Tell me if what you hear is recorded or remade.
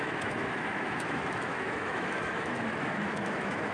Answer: remade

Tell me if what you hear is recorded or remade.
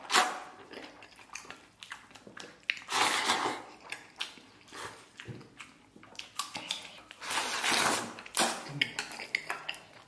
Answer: recorded